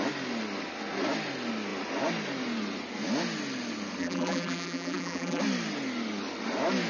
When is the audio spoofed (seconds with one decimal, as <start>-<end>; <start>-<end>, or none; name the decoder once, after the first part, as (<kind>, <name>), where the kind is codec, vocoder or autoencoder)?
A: 4.0-5.4 (vocoder, BigVGAN v2)